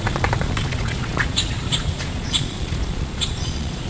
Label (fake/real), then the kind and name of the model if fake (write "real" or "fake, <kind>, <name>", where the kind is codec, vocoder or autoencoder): fake, vocoder, Vocos